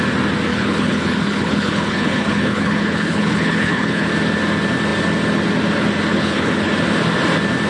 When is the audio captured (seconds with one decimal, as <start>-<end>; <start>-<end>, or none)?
0.0-0.5; 4.1-6.1; 6.7-7.7